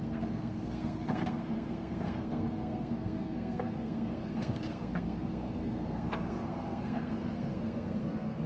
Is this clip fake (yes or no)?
yes